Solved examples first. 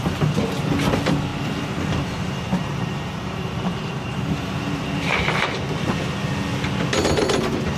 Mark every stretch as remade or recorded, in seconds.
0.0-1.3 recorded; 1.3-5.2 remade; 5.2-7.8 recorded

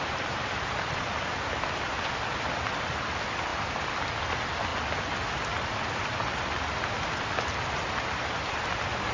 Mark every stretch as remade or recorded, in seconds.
0.0-9.1 recorded